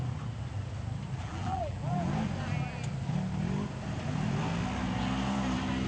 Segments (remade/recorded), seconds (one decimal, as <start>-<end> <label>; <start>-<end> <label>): 0.0-1.2 recorded; 1.2-2.1 remade; 2.1-5.9 recorded